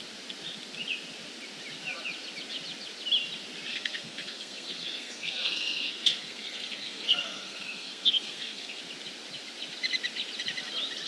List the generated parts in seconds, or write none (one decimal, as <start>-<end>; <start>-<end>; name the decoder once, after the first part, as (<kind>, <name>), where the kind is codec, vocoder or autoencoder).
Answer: 3.7-8.8 (codec, SNAC)